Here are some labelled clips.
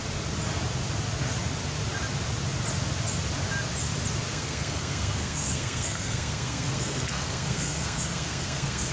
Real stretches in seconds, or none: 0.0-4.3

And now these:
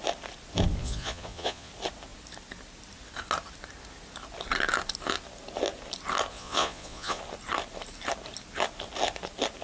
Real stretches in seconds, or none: 0.0-0.8; 1.7-6.3; 7.2-9.6

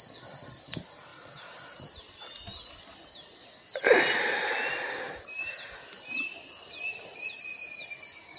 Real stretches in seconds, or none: 0.0-8.4

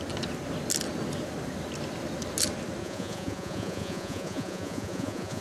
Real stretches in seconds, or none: 0.0-2.8

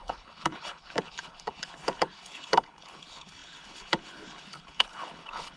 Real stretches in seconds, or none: none